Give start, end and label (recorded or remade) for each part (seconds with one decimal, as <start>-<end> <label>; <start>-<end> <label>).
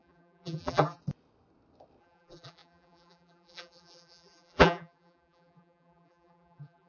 0.0-1.0 remade; 1.0-2.0 recorded; 2.0-6.9 remade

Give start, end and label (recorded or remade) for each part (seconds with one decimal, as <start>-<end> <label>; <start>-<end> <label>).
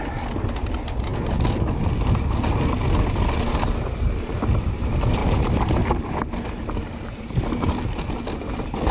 0.0-5.2 recorded; 5.2-6.5 remade; 6.5-8.9 recorded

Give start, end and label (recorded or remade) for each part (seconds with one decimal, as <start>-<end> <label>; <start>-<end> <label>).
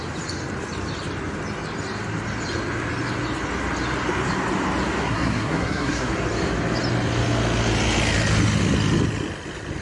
0.0-5.0 recorded; 5.0-6.1 remade; 6.1-9.8 recorded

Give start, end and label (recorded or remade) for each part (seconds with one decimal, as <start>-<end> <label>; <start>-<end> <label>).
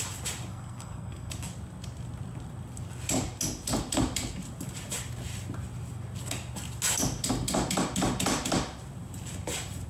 0.0-0.5 recorded; 0.5-1.3 remade; 1.3-9.9 recorded